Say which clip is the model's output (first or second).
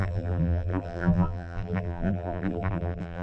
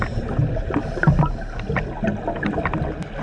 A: first